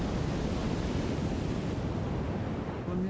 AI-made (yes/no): no